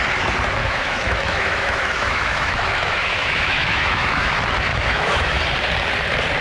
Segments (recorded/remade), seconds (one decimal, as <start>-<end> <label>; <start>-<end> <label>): 0.0-0.6 recorded; 0.6-4.3 remade; 4.3-4.7 recorded; 4.7-5.4 remade; 5.4-6.4 recorded